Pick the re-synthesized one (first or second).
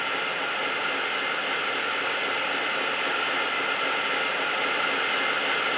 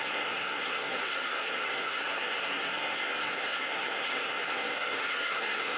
second